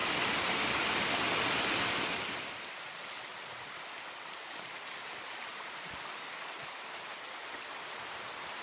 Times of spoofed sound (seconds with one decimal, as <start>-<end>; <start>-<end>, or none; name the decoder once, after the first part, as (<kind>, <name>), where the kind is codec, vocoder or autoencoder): none